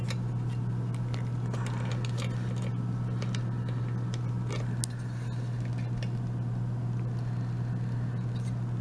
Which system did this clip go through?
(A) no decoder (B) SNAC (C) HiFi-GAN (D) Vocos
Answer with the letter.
A